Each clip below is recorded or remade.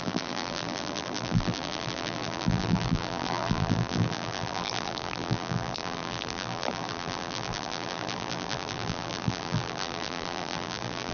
remade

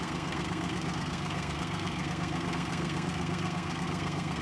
remade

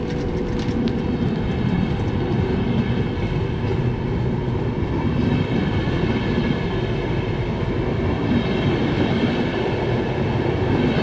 recorded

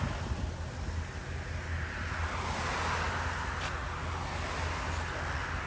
recorded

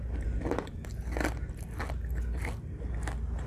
recorded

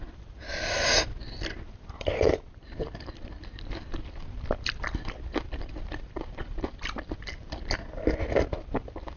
remade